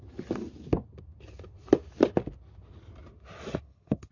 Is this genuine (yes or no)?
yes